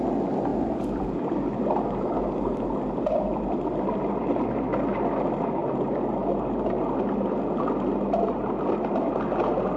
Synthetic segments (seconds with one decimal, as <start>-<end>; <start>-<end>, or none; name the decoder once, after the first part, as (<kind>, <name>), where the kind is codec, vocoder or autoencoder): none